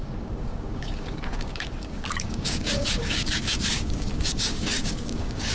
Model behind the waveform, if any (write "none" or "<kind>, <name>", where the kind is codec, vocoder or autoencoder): codec, DAC